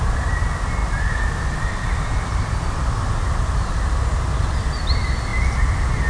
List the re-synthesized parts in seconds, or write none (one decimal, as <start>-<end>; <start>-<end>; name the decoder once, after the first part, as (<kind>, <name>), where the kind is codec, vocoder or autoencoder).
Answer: none